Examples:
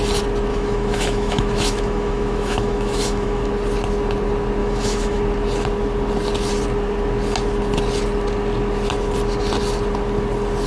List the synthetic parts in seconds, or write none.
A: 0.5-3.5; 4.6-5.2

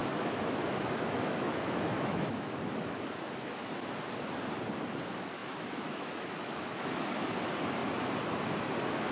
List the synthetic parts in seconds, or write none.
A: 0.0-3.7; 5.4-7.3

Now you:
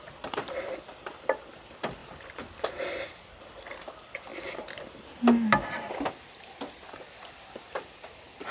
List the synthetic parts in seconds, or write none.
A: none

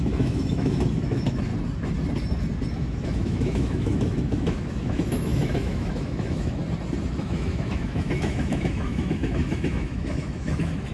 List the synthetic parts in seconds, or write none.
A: 0.0-1.5; 2.7-6.6; 7.2-10.9

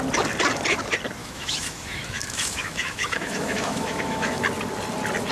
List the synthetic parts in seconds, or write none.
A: 1.2-4.4